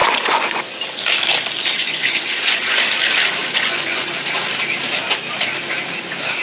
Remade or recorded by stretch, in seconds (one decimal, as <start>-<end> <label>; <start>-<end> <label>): 0.0-0.6 remade; 0.6-1.8 recorded; 1.8-2.8 remade; 2.8-3.4 recorded; 3.4-4.1 remade; 4.1-6.4 recorded